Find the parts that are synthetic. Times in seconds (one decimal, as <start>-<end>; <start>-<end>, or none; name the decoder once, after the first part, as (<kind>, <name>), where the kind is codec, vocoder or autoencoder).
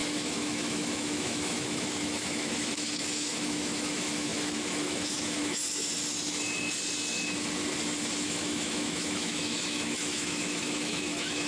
0.0-5.6 (autoencoder, DAC-VAE); 8.2-11.5